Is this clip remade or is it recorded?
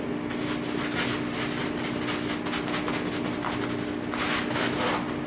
recorded